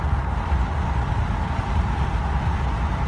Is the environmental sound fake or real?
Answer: real